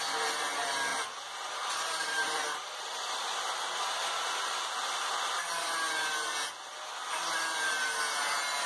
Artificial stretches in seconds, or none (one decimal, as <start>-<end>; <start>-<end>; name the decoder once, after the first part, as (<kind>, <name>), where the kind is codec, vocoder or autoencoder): 0.9-3.8 (vocoder, BigVGAN v2)